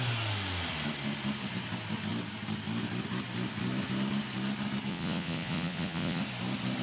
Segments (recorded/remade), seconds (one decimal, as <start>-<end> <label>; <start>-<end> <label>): 0.0-4.9 recorded; 4.9-6.2 remade; 6.2-6.8 recorded